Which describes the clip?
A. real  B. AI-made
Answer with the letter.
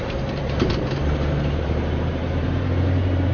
B